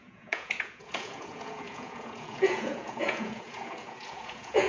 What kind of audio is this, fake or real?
fake